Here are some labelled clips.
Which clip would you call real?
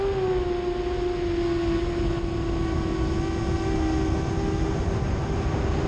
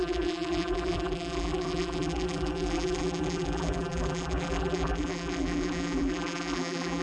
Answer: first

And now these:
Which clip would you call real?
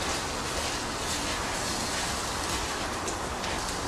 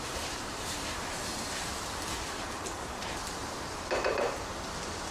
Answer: first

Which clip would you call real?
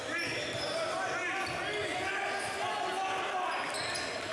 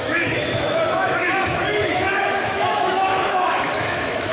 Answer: first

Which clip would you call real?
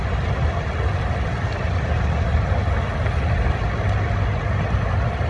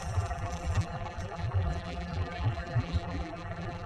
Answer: first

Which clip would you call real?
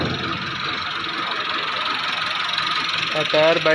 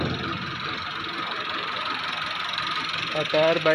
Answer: first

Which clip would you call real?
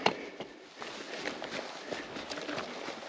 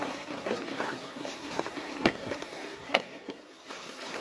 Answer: first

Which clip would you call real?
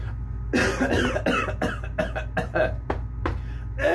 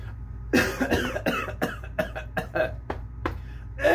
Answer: first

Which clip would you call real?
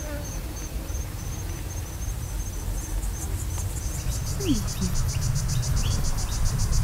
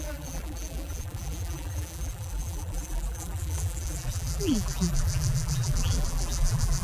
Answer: first